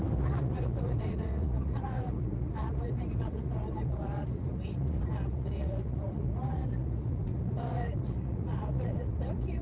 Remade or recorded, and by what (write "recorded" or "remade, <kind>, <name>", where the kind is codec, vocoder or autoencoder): remade, vocoder, Vocos